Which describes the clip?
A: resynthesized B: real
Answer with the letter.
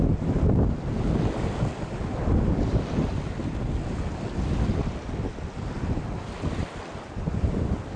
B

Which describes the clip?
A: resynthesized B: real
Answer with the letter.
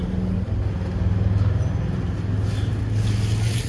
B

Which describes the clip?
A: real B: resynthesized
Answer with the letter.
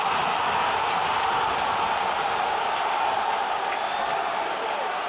A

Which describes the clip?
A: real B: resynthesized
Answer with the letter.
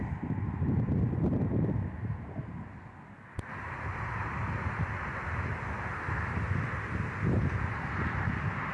A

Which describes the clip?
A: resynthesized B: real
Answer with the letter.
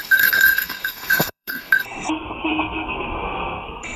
A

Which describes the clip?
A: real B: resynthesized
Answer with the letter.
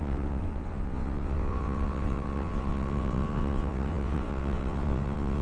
B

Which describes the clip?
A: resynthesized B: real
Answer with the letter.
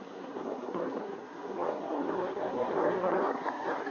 A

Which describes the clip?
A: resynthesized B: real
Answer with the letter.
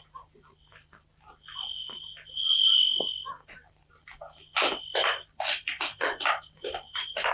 B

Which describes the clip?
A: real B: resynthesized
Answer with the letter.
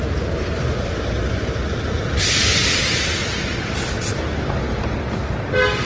A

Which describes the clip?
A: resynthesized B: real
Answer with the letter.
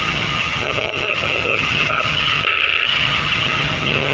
A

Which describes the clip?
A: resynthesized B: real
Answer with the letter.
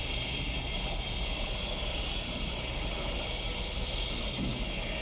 B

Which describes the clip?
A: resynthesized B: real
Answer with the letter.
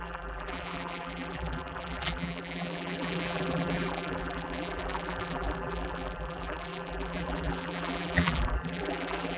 A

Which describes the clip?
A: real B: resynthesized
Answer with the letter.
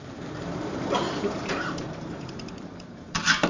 B